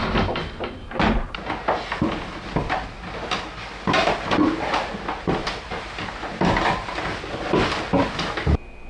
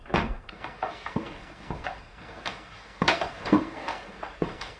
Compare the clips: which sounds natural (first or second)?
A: first